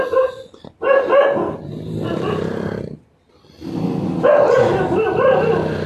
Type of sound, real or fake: real